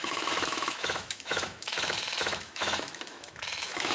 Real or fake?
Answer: fake